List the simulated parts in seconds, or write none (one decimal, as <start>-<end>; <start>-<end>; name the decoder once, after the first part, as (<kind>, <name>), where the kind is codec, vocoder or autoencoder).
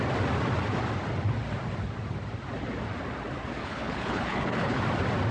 3.6-4.8 (codec, HILCodec)